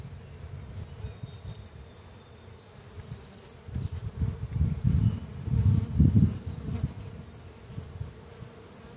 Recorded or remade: recorded